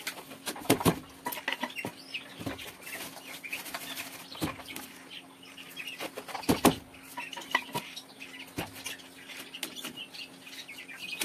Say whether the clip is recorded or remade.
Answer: recorded